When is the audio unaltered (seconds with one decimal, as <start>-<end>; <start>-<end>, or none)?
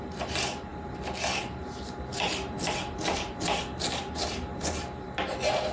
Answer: 0.0-5.7